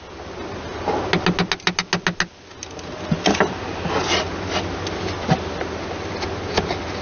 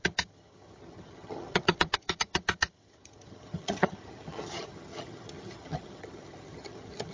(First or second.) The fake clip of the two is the second